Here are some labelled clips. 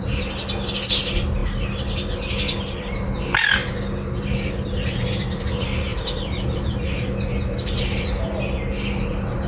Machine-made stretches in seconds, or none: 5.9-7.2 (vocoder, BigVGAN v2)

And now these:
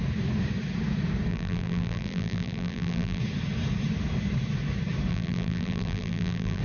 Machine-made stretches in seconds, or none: 1.3-3.2 (vocoder, BigVGAN v2); 5.1-6.6

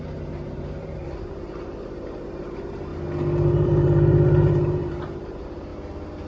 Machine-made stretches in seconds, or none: 0.0-2.9 (vocoder, BigVGAN v2); 3.5-5.7

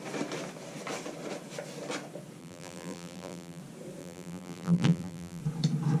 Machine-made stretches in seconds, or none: 2.4-3.6 (vocoder, BigVGAN v2); 4.0-5.4

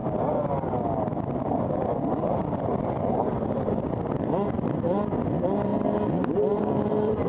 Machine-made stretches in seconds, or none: 1.4-5.7 (vocoder, BigVGAN v2); 6.4-7.3

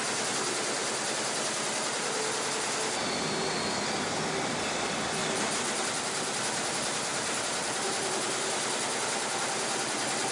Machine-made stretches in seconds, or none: 0.8-2.5 (vocoder, BigVGAN v2); 7.1-8.1

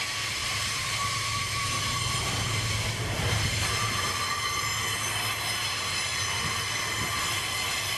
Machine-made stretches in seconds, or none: 0.4-4.0 (vocoder, BigVGAN v2)

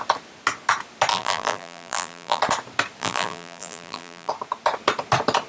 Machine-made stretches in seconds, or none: 1.1-2.4 (vocoder, BigVGAN v2); 3.0-4.3